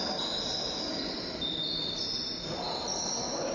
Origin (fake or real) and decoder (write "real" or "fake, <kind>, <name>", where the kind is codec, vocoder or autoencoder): real